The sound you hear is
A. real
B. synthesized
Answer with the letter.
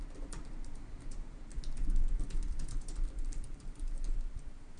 B